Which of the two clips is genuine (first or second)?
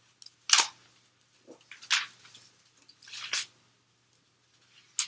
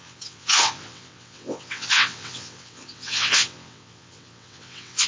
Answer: first